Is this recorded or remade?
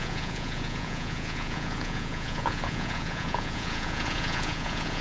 remade